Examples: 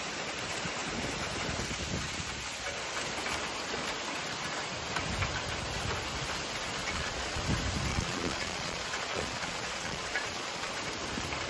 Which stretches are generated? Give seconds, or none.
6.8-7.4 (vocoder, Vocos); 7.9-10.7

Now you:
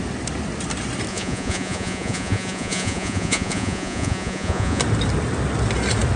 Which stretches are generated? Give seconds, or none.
1.1-4.8 (vocoder, Vocos)

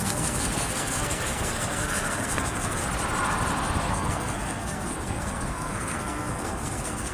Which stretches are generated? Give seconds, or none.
0.0-2.8 (codec, SNAC); 3.9-7.1